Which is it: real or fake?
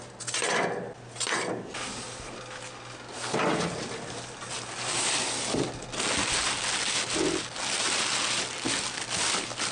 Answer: real